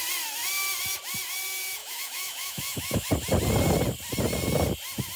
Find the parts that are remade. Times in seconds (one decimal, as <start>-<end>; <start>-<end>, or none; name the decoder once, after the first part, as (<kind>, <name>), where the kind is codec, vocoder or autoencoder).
1.8-3.1 (autoencoder, DAC-VAE)